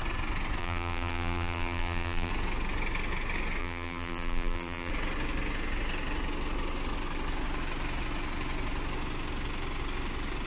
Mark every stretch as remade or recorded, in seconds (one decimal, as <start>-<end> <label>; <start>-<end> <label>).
0.0-0.6 recorded; 0.6-2.3 remade; 2.3-3.6 recorded; 3.6-4.9 remade; 4.9-10.5 recorded